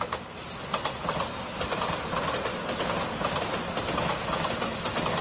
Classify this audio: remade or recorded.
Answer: recorded